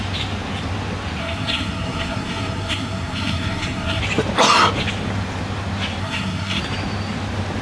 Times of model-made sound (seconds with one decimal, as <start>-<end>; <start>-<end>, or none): 1.2-4.0; 6.0-6.6